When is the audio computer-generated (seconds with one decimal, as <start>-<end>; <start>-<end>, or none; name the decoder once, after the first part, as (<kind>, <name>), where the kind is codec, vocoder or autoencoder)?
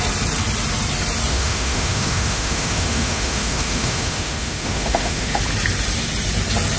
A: 1.3-5.4 (autoencoder, DAC-VAE)